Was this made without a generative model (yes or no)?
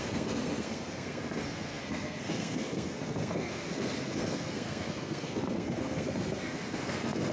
no